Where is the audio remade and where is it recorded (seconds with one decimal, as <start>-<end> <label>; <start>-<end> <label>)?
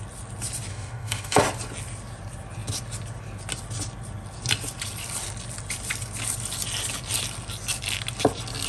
0.0-0.7 recorded; 0.7-1.4 remade; 1.4-8.7 recorded